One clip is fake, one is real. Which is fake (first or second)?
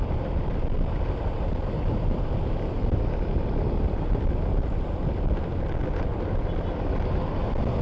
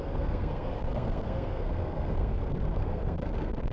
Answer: second